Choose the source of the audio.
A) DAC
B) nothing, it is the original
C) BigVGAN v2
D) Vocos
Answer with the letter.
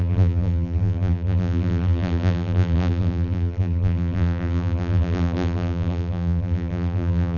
C